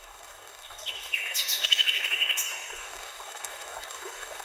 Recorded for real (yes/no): no